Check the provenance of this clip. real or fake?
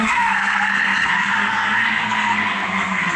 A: fake